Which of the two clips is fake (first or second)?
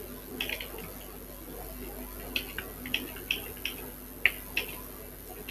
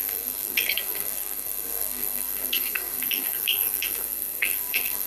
second